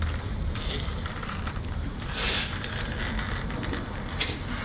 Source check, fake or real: real